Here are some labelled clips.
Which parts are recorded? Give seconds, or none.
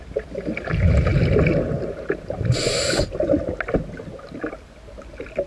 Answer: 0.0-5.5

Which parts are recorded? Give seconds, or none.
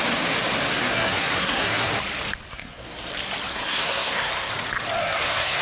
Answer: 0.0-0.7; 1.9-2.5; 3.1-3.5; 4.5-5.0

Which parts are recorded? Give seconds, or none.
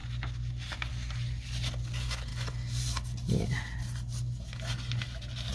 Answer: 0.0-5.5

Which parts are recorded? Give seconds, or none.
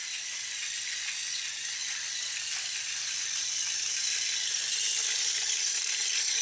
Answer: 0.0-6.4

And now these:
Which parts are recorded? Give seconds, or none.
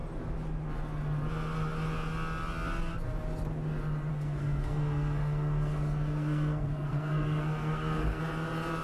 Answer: 0.0-4.1; 8.2-8.8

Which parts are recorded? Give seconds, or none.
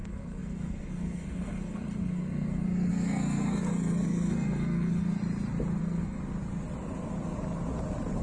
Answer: 5.2-5.8; 6.2-8.2